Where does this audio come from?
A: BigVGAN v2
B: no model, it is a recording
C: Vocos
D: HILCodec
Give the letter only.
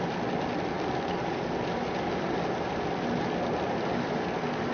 B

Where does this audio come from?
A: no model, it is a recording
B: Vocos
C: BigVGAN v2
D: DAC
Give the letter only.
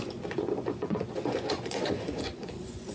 B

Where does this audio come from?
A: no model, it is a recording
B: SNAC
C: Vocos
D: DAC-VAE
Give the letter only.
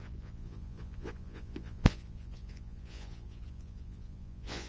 C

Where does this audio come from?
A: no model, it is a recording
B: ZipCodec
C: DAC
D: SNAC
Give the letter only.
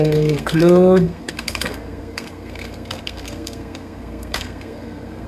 D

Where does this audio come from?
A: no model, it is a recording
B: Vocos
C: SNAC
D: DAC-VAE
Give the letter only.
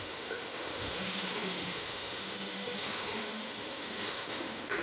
D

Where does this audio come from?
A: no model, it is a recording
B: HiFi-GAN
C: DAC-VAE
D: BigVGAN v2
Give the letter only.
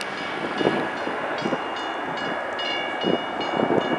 A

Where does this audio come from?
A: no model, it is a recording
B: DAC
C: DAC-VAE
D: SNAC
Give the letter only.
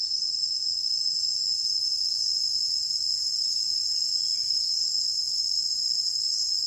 A